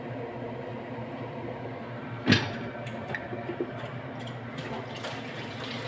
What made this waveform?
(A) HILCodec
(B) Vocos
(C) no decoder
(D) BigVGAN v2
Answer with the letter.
C